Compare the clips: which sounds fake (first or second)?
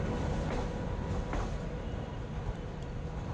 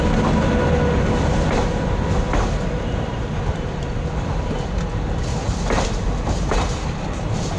second